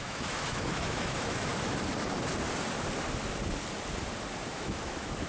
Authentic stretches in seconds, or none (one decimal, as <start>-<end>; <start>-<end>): 1.5-4.5